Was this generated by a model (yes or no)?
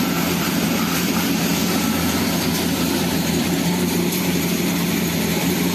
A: yes